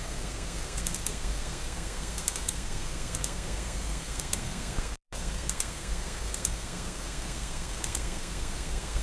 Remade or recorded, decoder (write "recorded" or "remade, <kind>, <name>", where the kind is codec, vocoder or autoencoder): remade, codec, SNAC